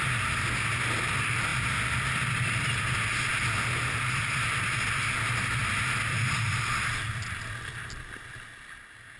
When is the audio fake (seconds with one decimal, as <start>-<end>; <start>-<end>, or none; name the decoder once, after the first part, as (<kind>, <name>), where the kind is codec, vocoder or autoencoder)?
none